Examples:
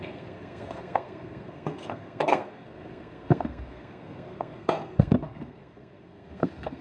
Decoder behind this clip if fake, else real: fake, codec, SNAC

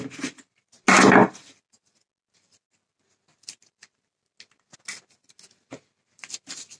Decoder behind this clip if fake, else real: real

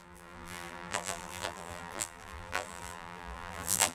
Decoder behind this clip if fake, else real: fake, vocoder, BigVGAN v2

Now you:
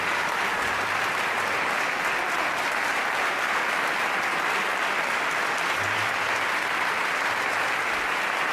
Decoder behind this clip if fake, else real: real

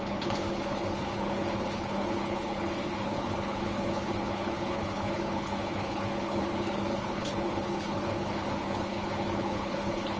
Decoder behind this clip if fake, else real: fake, codec, HILCodec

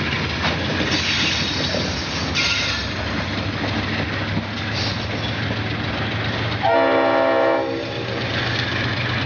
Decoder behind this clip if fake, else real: real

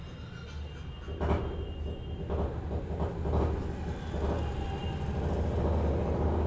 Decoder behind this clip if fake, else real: real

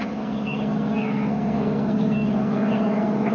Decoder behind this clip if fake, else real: fake, codec, SNAC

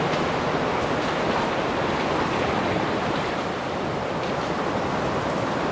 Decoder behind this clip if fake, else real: real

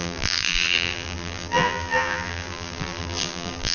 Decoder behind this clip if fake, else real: fake, vocoder, BigVGAN v2